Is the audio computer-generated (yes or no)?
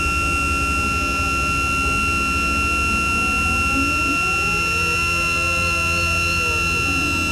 no